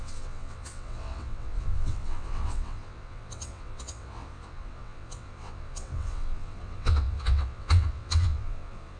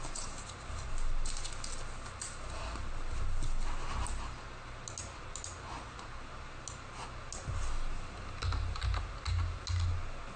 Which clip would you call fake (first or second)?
first